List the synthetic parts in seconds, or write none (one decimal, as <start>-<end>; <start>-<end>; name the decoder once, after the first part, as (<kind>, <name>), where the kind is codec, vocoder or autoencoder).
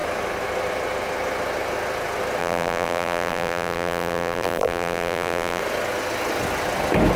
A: 2.4-5.6 (vocoder, BigVGAN v2)